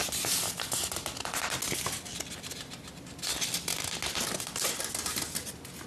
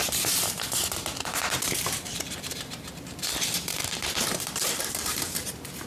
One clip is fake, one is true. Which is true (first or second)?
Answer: first